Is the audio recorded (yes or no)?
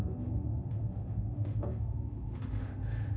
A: no